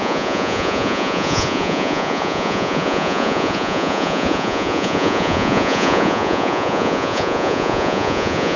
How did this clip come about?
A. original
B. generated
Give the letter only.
B